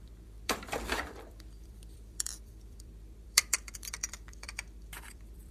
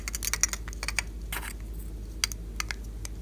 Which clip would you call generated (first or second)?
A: first